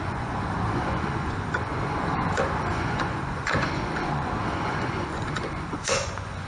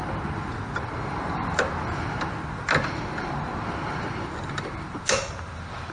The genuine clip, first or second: second